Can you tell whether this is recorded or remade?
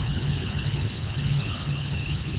remade